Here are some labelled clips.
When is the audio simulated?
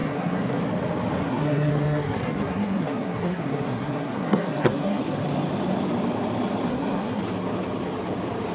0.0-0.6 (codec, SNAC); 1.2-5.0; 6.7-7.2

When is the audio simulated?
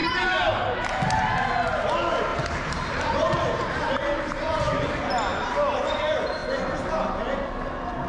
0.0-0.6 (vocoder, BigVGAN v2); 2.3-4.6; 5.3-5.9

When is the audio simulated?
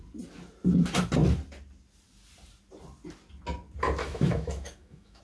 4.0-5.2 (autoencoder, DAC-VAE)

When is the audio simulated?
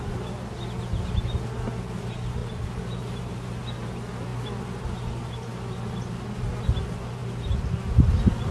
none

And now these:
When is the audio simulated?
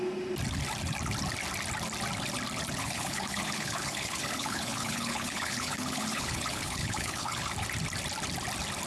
2.8-7.5 (codec, HILCodec)